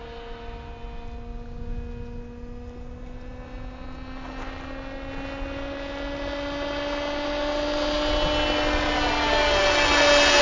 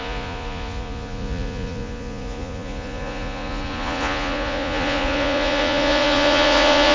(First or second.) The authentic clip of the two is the first